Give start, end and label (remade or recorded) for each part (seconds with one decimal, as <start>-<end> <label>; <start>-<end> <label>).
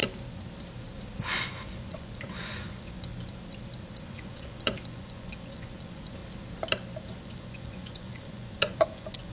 0.0-1.3 recorded; 1.3-3.1 remade; 3.1-4.0 recorded; 4.0-6.2 remade; 6.2-7.1 recorded; 7.1-9.3 remade